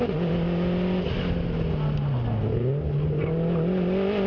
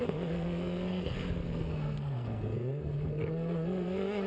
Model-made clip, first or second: second